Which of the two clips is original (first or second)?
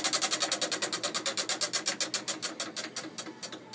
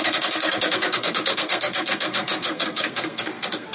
first